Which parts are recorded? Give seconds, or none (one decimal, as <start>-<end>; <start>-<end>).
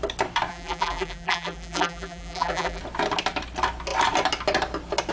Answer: 0.0-0.5; 2.8-5.1